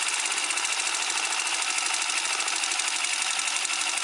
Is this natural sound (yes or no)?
yes